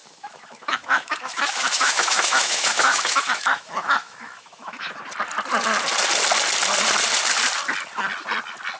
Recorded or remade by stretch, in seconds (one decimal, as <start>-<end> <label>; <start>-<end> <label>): 0.0-5.0 remade; 5.0-8.8 recorded